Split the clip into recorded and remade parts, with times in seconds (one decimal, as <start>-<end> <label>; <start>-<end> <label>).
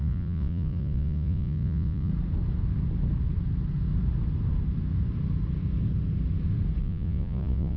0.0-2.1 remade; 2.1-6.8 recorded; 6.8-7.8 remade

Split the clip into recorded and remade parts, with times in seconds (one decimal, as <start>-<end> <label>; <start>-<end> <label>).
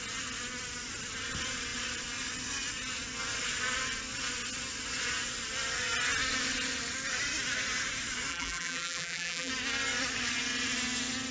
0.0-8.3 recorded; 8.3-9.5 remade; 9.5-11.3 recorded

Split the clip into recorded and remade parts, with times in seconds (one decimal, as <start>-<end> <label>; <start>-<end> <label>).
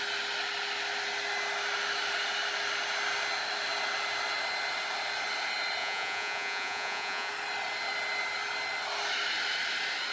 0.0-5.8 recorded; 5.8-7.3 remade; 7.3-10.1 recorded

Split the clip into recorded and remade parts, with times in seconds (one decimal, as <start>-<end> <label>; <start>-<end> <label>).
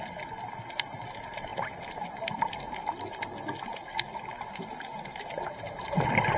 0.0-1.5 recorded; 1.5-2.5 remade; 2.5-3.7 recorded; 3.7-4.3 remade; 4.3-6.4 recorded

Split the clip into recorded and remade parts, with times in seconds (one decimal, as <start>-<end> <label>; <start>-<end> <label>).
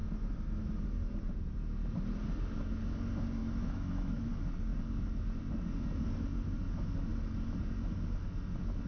0.0-3.4 recorded; 3.4-4.3 remade; 4.3-8.9 recorded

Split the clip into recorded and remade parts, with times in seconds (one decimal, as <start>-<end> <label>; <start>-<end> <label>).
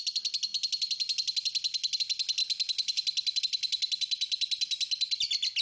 0.0-5.6 recorded